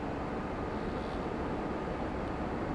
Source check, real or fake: real